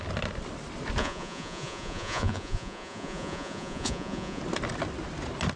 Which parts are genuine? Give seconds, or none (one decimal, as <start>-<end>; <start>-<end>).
0.0-1.0; 4.4-5.6